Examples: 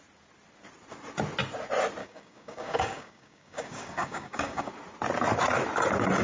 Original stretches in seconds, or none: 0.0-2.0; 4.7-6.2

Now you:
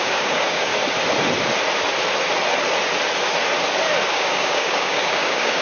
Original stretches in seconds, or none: 0.7-4.1

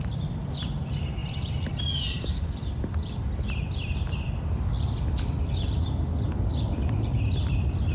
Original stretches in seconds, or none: 0.0-7.9

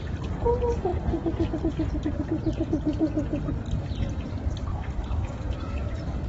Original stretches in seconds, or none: 0.0-4.7

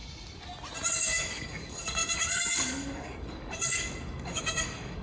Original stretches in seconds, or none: 0.0-0.9